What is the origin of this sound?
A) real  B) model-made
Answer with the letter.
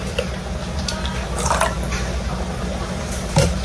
A